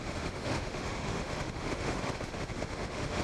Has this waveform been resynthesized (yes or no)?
yes